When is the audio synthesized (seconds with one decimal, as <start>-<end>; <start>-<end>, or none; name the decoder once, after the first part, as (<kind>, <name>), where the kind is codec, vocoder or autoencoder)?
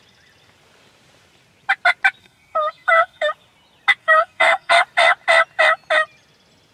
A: 2.2-3.3 (codec, SNAC); 4.0-4.8